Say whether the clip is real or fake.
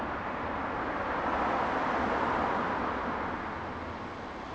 real